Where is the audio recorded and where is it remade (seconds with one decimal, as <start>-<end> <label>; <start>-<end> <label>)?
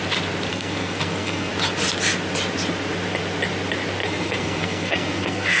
0.0-0.5 recorded; 0.5-1.5 remade; 1.5-4.0 recorded; 4.0-5.6 remade